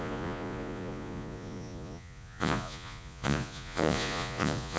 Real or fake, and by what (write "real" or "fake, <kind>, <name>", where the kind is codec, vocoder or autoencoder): fake, vocoder, Vocos